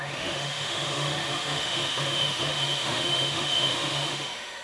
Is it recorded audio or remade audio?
remade